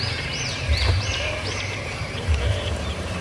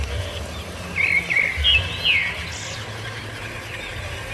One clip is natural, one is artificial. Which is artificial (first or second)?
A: first